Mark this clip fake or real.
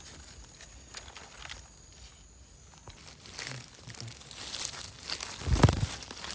real